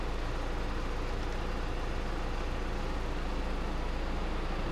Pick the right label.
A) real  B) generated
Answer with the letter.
A